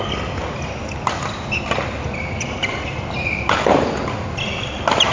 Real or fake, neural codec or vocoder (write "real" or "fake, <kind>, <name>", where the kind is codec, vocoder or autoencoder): real